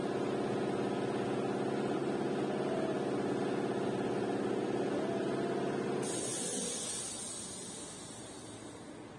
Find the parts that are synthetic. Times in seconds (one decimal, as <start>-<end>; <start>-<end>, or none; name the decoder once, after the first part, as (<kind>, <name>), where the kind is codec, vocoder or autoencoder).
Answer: none